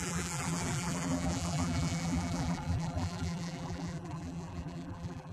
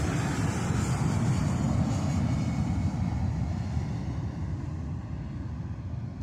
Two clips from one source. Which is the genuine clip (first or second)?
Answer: second